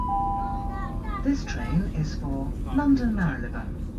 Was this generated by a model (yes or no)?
no